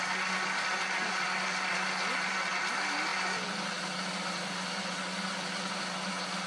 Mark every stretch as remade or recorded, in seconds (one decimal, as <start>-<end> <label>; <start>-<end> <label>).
0.0-6.5 recorded